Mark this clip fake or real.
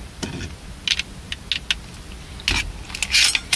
real